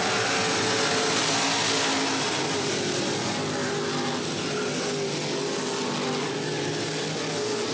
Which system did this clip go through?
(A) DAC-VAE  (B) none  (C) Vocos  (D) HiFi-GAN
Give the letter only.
B